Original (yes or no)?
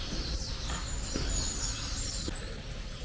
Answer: yes